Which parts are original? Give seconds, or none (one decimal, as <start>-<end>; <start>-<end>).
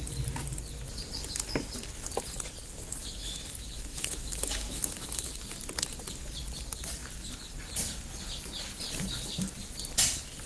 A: 0.0-3.0; 5.4-10.5